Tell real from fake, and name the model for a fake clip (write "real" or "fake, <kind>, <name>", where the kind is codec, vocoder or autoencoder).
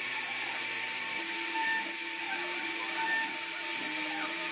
real